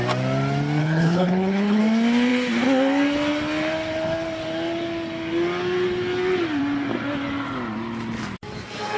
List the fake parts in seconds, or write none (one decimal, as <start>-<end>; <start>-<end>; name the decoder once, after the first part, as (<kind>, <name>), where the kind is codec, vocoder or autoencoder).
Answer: 0.8-1.8 (codec, HILCodec)